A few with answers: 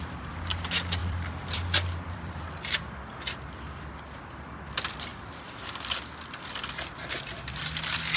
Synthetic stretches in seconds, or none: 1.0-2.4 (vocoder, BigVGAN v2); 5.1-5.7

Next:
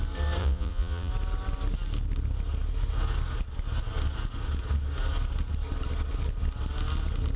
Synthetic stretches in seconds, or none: 0.4-1.1 (vocoder, Vocos)

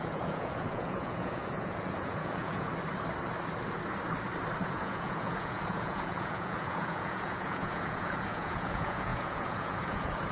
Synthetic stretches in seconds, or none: 0.0-2.7 (vocoder, Vocos); 4.6-10.3

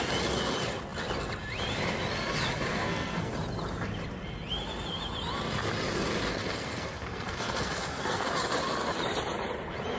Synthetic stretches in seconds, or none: 2.7-3.3 (codec, SNAC); 6.5-8.3

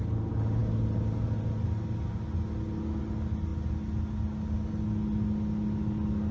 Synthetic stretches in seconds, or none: none

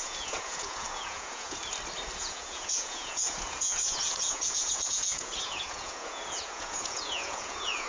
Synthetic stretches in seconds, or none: 0.0-1.6 (vocoder, Vocos); 2.2-7.9

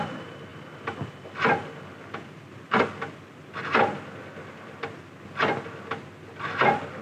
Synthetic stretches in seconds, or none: none

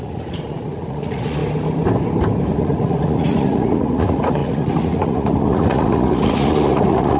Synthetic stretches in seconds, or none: 0.0-1.4 (vocoder, Vocos); 2.5-7.2